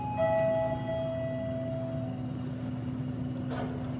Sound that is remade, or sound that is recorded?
recorded